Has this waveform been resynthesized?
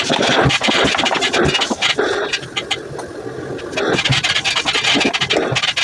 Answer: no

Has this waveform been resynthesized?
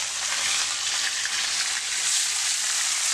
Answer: no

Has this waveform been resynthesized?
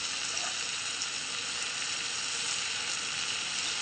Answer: no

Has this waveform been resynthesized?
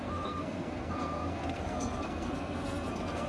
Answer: yes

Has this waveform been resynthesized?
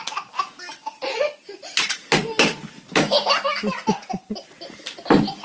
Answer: no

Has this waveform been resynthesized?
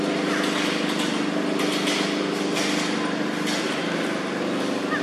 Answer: no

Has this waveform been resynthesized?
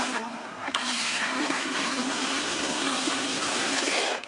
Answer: yes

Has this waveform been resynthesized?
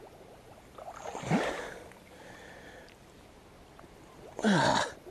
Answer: no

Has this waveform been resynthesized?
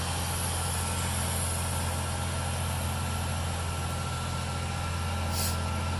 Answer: no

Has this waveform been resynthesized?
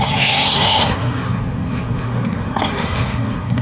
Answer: yes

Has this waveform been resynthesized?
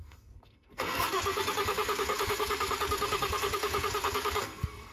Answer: yes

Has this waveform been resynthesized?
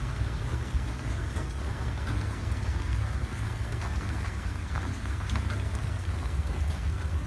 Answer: yes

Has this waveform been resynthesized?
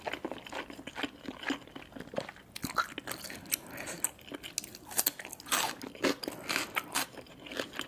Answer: no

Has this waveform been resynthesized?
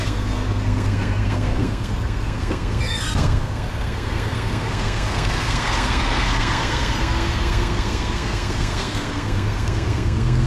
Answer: yes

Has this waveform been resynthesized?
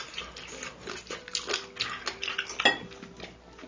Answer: no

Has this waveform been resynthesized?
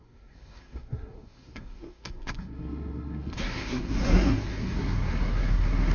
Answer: yes